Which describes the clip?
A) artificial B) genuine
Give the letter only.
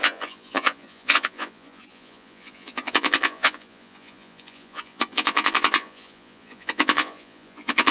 A